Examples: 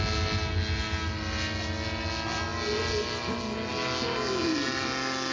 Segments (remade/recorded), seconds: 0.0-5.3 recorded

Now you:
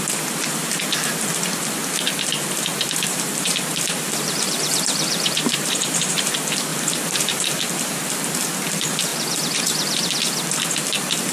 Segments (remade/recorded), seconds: 0.0-2.7 recorded; 2.7-6.3 remade; 6.3-6.7 recorded; 6.7-7.6 remade; 7.6-11.3 recorded

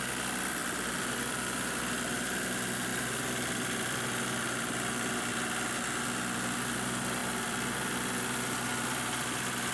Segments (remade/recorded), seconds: 0.0-0.6 recorded; 0.6-1.8 remade; 1.8-2.9 recorded; 2.9-5.3 remade; 5.3-7.2 recorded; 7.2-9.1 remade; 9.1-9.7 recorded

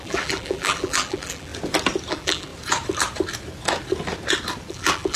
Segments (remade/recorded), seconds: 0.0-1.5 remade; 1.5-2.1 recorded; 2.1-2.5 remade; 2.5-4.7 recorded; 4.7-5.2 remade

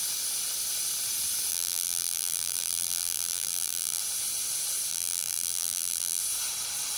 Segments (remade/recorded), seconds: 0.0-1.5 recorded; 1.5-4.0 remade; 4.0-4.9 recorded; 4.9-6.2 remade; 6.2-7.0 recorded